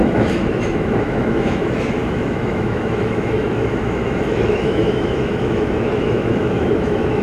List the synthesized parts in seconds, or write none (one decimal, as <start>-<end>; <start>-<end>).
0.0-7.2